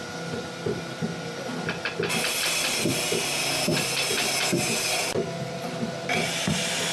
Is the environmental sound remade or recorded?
recorded